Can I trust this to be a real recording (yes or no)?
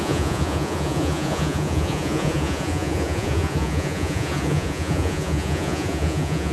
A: no